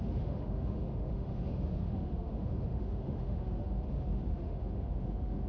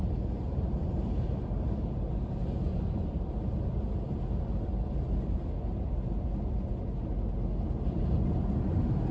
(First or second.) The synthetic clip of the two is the first